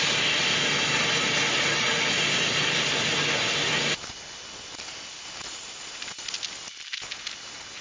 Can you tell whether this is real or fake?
real